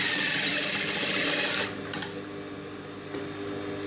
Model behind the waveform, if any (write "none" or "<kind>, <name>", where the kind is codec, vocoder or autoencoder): none